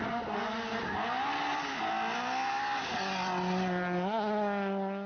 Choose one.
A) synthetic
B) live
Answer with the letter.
B